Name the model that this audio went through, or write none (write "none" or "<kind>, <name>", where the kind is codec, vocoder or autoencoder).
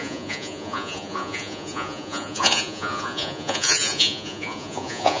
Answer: vocoder, Vocos